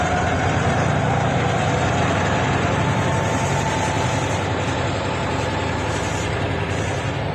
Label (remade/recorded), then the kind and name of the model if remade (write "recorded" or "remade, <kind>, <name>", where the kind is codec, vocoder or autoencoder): remade, vocoder, BigVGAN v2